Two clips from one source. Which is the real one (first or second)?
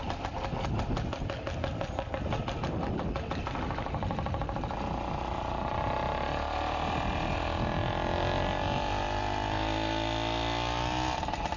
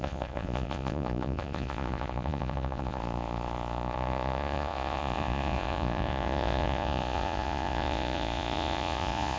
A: first